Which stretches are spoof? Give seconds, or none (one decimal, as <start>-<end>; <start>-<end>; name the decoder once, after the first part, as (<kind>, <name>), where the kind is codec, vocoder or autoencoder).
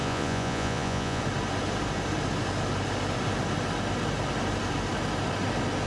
0.0-1.2 (vocoder, Vocos)